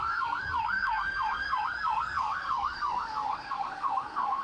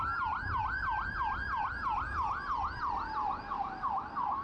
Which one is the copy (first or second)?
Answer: first